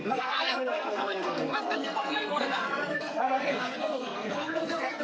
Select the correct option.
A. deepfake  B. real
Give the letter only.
A